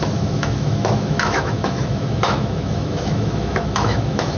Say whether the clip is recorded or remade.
remade